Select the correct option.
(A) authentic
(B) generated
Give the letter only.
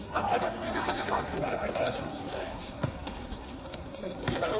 B